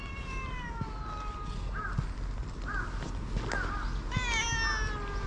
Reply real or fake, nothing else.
real